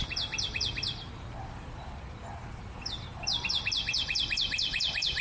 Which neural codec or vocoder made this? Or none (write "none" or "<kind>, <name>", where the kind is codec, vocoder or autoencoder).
vocoder, BigVGAN v2